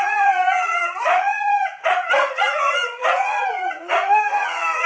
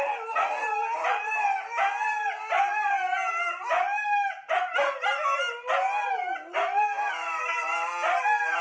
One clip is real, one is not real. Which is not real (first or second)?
first